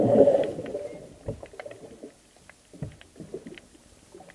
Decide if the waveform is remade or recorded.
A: recorded